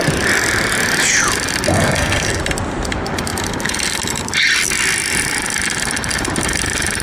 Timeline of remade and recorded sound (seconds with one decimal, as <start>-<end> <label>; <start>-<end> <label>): 0.0-1.7 recorded; 1.7-2.4 remade; 2.4-7.0 recorded